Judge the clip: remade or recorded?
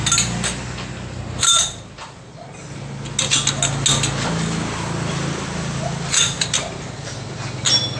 recorded